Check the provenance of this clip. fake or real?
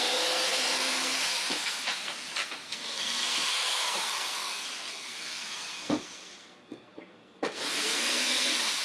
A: fake